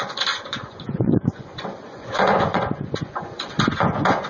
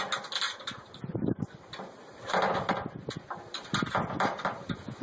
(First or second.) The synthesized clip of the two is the first